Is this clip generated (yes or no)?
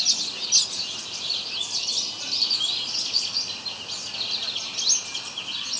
no